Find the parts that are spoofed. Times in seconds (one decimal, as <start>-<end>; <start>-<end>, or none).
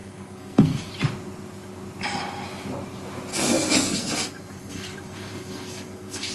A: 0.0-0.9; 3.3-6.3